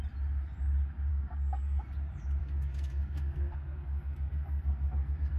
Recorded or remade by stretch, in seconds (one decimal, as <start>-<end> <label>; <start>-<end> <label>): 0.0-1.1 recorded; 1.1-1.8 remade; 1.8-2.4 recorded; 2.4-5.4 remade